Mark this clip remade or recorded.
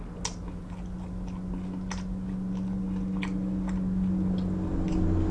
recorded